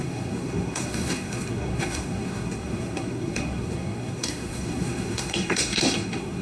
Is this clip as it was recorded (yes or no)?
no